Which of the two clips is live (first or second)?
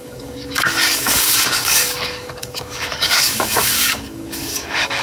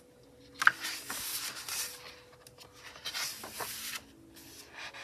second